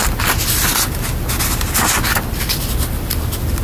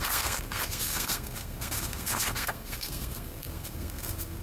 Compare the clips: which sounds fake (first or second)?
second